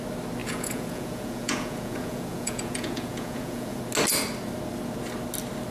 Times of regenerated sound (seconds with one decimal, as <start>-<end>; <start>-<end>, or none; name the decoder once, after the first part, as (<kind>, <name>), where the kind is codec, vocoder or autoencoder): 0.4-3.8 (vocoder, Vocos)